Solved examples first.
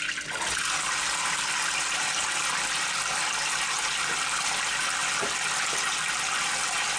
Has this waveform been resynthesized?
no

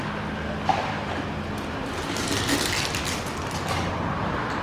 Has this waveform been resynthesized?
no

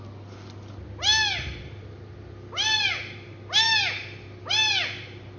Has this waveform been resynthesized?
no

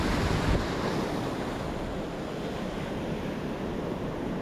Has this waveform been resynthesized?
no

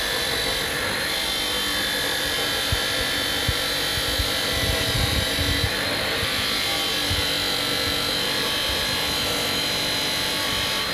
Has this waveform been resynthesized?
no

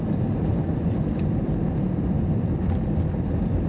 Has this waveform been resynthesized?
no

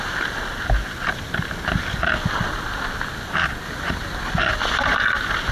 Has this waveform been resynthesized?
no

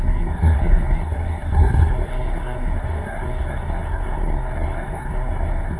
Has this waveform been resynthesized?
yes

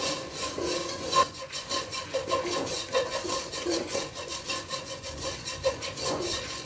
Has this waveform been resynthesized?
yes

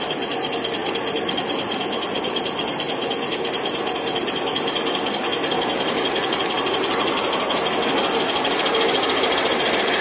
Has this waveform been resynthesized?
no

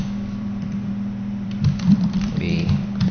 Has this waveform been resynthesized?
yes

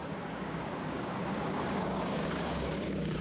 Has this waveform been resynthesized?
yes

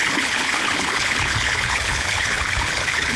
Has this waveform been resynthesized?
yes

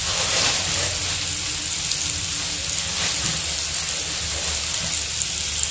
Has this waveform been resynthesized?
no